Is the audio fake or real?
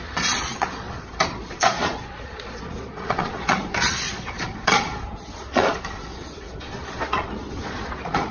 fake